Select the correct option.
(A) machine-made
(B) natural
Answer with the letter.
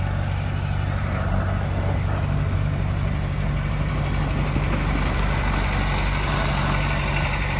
B